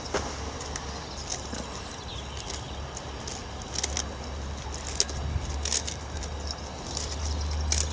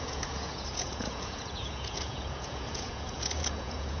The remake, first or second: second